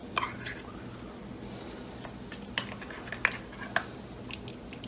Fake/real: real